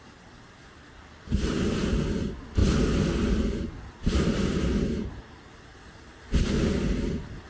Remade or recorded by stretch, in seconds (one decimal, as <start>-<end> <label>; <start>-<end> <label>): 0.0-7.5 recorded